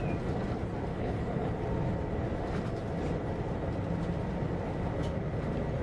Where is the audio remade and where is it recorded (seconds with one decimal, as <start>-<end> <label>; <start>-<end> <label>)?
0.0-0.9 recorded; 0.9-1.5 remade; 1.5-5.8 recorded